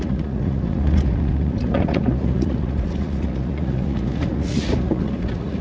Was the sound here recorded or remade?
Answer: remade